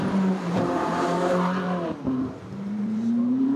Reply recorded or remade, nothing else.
remade